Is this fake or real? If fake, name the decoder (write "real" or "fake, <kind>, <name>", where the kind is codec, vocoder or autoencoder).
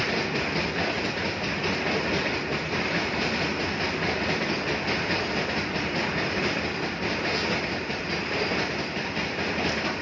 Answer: real